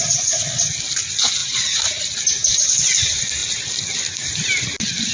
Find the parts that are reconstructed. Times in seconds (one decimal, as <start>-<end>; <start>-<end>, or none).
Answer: 1.4-2.0